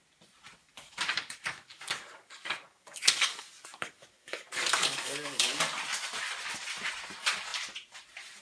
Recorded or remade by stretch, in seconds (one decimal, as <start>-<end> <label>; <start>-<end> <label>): 0.0-0.6 recorded; 0.6-5.6 remade; 5.6-8.4 recorded